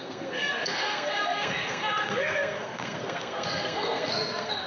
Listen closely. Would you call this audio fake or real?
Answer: fake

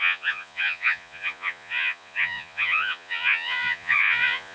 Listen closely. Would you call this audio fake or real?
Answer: fake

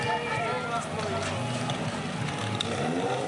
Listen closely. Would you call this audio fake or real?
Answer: real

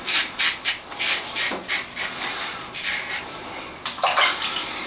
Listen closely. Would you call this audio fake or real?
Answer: real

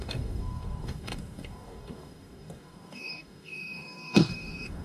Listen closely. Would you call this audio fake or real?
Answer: fake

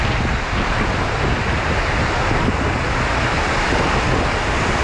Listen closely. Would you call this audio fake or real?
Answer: real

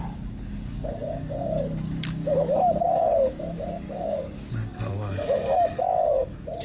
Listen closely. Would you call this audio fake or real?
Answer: fake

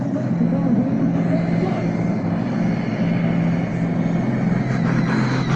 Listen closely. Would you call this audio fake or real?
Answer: real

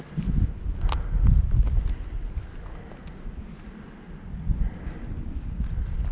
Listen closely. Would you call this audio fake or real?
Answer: real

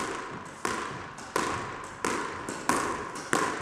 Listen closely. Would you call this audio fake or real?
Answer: real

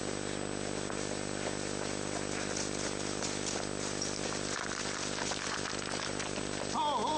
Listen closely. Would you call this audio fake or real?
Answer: real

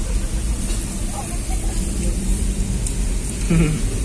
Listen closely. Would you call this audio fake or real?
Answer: real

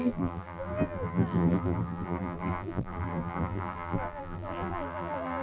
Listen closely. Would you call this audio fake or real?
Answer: fake